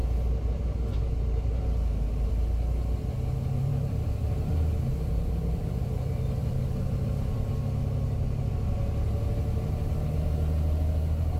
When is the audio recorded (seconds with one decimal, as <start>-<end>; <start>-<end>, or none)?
0.0-3.7; 8.5-11.4